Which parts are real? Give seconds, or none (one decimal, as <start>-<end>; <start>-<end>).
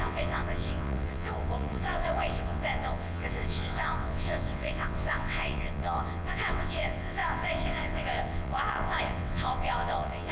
none